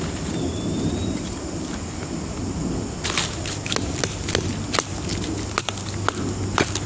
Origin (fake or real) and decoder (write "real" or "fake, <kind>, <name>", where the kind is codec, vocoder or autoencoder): real